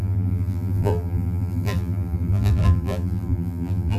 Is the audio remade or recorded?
remade